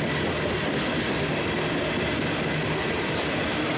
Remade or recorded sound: recorded